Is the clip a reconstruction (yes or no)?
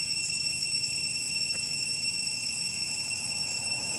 yes